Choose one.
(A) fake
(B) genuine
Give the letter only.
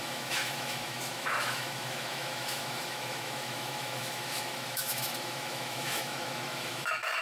A